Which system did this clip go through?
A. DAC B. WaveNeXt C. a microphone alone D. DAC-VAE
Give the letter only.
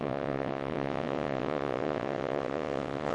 B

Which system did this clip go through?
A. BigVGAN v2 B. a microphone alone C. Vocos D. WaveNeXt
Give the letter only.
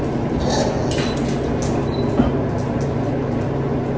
B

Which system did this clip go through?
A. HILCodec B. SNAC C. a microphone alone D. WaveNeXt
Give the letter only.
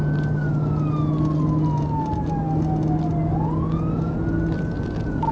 C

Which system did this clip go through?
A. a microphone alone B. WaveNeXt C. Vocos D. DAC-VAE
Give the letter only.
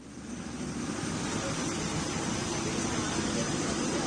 A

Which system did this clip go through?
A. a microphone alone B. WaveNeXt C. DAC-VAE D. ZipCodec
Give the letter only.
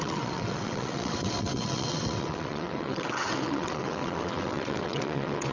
B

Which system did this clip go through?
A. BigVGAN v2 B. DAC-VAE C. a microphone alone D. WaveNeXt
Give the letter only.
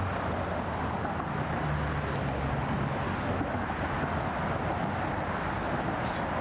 C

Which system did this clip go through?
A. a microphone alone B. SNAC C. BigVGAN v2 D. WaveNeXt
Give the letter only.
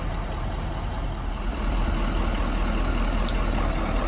A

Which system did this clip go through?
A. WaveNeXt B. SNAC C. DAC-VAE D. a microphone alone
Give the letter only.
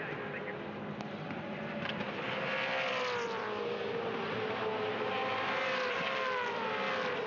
D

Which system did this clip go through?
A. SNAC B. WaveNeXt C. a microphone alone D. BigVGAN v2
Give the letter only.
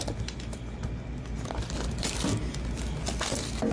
C